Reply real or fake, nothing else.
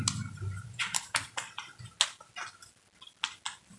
real